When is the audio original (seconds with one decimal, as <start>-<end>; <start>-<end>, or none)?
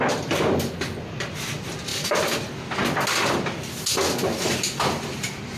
0.0-5.6